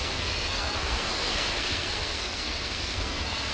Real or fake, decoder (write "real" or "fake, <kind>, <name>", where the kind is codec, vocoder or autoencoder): fake, codec, SNAC